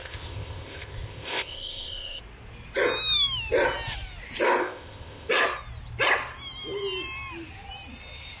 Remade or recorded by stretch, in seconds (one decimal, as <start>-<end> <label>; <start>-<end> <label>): 0.0-2.2 remade; 2.2-4.6 recorded; 4.6-5.3 remade; 5.3-8.4 recorded